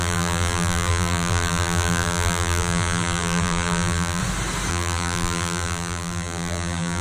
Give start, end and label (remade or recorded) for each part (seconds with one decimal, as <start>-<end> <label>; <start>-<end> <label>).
0.0-4.2 remade; 4.2-4.7 recorded; 4.7-7.0 remade